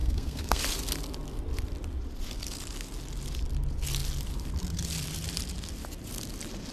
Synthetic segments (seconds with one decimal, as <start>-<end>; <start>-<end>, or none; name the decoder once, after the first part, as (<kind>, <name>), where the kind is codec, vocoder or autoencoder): 0.0-0.6 (codec, SNAC)